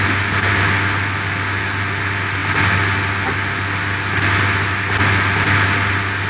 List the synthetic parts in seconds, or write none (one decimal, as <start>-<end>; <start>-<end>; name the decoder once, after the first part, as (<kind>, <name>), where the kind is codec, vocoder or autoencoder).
none